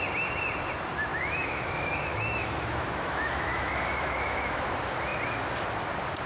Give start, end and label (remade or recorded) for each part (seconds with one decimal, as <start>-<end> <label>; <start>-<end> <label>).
0.0-1.1 recorded; 1.1-4.6 remade; 4.6-6.3 recorded

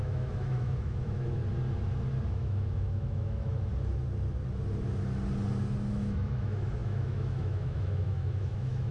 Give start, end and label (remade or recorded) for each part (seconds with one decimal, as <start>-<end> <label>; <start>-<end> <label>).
0.0-1.4 remade; 1.4-2.3 recorded; 2.3-3.7 remade; 3.7-5.9 recorded; 5.9-8.9 remade

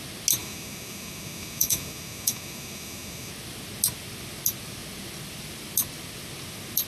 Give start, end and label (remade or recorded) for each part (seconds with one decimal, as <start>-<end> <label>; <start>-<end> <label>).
0.0-0.4 recorded; 0.4-3.3 remade; 3.3-6.9 recorded

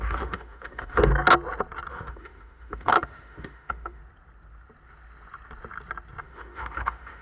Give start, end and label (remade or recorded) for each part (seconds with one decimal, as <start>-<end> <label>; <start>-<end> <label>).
0.0-1.1 remade; 1.1-1.9 recorded; 1.9-4.0 remade; 4.0-6.2 recorded; 6.2-7.2 remade

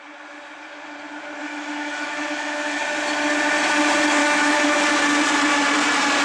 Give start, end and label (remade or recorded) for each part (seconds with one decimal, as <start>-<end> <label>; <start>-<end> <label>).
0.0-1.4 recorded; 1.4-2.8 remade; 2.8-4.2 recorded; 4.2-4.8 remade; 4.8-6.2 recorded

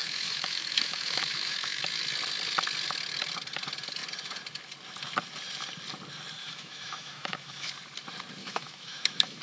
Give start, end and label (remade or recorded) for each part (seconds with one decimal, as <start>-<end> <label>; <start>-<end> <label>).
0.0-2.0 remade; 2.0-6.4 recorded; 6.4-7.7 remade; 7.7-8.4 recorded; 8.4-9.4 remade

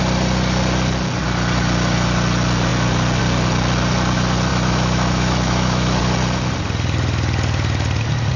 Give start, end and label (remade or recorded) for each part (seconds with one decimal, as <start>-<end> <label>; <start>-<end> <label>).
0.0-4.5 recorded; 4.5-6.0 remade; 6.0-8.4 recorded